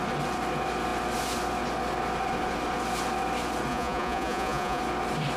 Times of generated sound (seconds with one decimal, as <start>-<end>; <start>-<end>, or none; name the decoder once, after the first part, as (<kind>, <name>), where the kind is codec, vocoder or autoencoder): 3.7-4.8 (vocoder, Vocos)